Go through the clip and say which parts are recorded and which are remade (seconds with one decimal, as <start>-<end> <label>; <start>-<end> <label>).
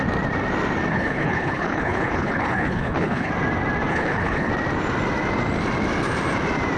0.0-0.9 recorded; 0.9-3.3 remade; 3.3-3.9 recorded; 3.9-4.5 remade; 4.5-6.8 recorded